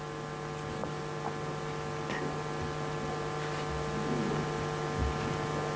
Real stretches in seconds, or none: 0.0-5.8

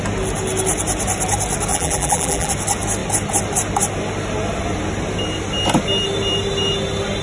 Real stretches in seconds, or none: 0.0-1.7; 2.5-7.2

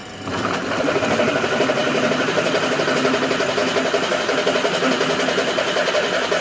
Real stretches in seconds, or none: 1.0-1.8; 2.8-6.4

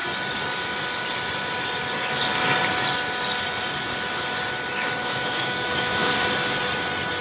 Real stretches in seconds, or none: 0.0-5.0; 6.1-7.2

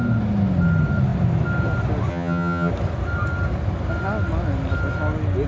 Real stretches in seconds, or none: 0.0-2.1; 2.7-5.5